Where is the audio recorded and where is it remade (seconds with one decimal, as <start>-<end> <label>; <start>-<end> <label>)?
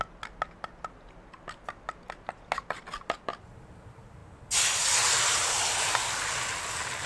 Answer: 0.0-7.1 recorded